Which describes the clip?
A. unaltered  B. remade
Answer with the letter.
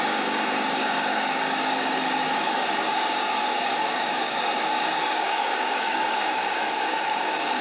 B